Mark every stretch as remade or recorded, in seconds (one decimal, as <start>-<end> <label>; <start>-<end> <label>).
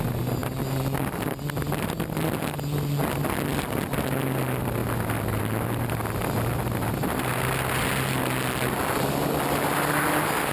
0.0-10.5 recorded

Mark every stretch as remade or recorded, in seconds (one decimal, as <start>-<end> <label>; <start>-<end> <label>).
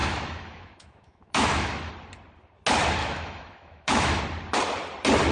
0.0-1.9 remade; 1.9-3.0 recorded; 3.0-4.2 remade; 4.2-5.3 recorded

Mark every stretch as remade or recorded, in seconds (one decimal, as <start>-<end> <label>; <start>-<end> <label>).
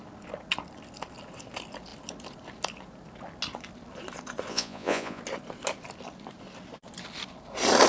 0.0-4.5 recorded; 4.5-5.2 remade; 5.2-7.9 recorded